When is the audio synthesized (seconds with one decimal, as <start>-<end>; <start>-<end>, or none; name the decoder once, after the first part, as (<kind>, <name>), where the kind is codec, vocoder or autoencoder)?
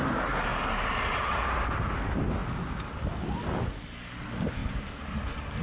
4.6-5.6 (vocoder, BigVGAN v2)